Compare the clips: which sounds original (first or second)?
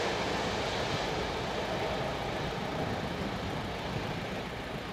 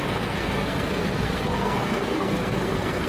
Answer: first